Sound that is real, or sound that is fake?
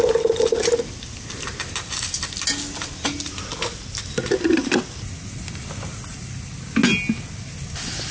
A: real